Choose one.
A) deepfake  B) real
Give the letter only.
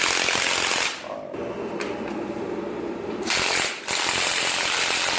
B